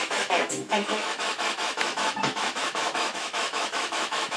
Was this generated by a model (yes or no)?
yes